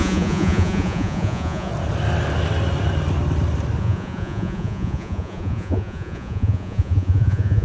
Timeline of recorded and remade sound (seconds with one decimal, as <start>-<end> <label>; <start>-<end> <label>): 0.0-1.7 remade; 1.7-3.8 recorded; 3.8-7.6 remade